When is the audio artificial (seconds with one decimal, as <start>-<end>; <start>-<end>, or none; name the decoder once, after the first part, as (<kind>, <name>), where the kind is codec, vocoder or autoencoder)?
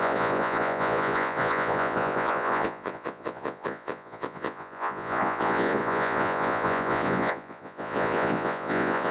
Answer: 0.0-9.1 (vocoder, Vocos)